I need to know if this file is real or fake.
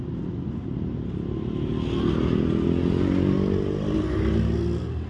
real